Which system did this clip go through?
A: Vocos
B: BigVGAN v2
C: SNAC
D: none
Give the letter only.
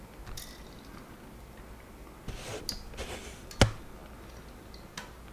D